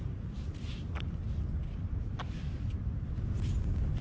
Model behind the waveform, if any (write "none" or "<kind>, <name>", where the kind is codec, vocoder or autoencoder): none